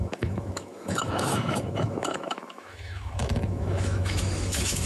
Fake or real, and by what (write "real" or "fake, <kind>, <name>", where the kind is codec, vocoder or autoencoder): fake, autoencoder, DAC-VAE